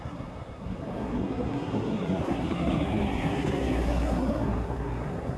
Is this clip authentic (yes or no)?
no